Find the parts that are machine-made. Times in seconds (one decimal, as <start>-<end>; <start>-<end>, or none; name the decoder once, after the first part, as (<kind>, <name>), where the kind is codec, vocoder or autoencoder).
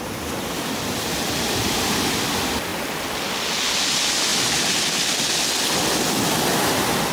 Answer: none